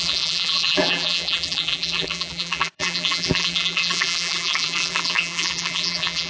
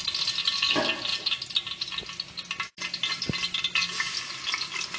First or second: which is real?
second